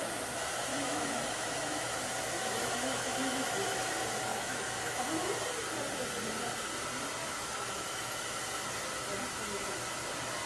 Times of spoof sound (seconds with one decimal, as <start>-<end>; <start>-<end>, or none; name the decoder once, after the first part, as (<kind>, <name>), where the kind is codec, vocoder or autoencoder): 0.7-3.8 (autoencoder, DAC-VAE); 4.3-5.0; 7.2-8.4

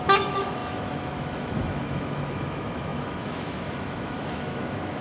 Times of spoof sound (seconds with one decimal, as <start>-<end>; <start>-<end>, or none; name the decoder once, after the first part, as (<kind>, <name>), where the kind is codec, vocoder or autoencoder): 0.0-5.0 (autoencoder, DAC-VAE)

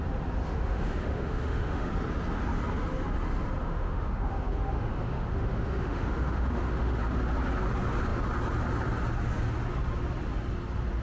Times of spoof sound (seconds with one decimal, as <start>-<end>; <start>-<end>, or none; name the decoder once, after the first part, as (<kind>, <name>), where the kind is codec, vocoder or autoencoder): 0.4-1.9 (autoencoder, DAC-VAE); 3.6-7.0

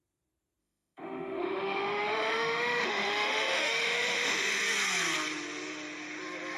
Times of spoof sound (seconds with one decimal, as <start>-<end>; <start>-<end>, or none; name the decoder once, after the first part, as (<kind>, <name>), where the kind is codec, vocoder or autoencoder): 0.6-4.6 (autoencoder, DAC-VAE)

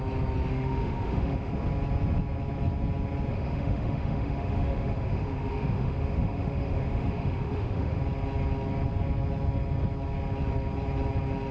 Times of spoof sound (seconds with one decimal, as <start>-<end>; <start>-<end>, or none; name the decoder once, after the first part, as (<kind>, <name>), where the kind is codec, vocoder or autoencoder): 0.5-1.5 (autoencoder, DAC-VAE); 3.3-8.0

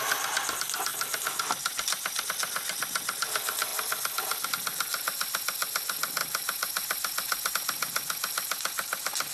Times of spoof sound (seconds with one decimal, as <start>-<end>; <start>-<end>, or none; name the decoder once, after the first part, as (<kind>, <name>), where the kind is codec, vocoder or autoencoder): none

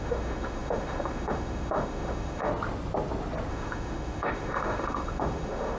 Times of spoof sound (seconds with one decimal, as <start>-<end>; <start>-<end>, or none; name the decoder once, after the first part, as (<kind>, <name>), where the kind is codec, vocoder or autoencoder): 0.0-2.5 (autoencoder, DAC-VAE); 3.5-5.8

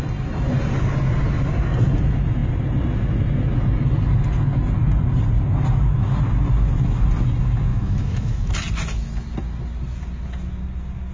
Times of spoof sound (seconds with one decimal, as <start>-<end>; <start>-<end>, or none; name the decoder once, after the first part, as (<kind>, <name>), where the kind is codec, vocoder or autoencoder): 7.7-8.5 (autoencoder, DAC-VAE)